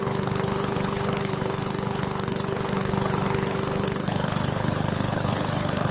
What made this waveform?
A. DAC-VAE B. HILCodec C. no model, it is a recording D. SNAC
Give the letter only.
B